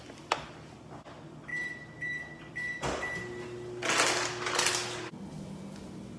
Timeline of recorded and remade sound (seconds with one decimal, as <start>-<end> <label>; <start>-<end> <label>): 0.0-6.2 recorded